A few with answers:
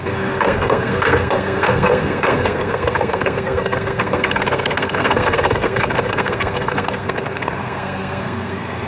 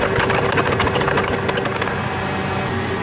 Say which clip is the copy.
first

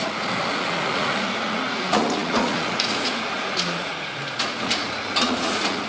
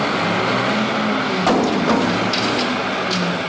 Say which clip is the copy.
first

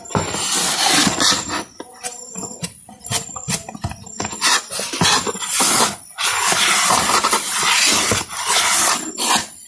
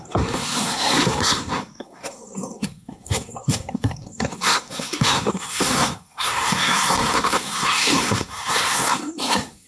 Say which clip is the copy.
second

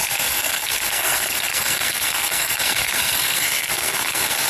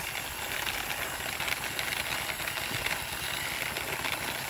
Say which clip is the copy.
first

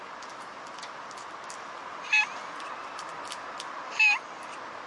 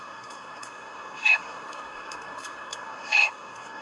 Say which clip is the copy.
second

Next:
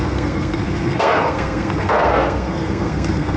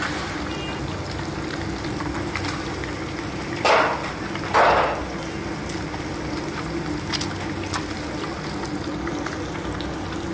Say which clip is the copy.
first